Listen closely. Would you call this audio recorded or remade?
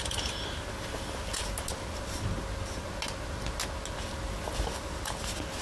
recorded